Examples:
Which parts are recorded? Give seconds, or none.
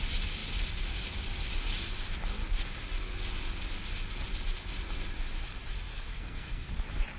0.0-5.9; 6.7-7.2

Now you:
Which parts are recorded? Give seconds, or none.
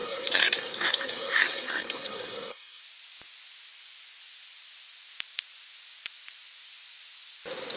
2.8-7.8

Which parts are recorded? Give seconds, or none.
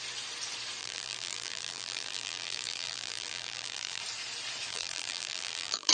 0.0-0.8; 4.0-4.7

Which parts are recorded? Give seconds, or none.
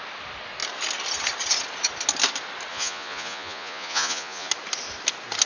0.0-2.7; 4.5-5.5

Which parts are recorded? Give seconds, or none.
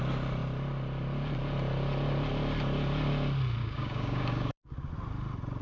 0.0-3.6; 4.9-5.6